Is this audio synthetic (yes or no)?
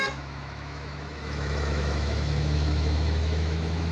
yes